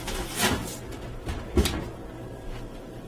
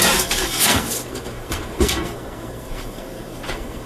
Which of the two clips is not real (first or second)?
second